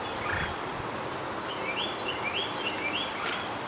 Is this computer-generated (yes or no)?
no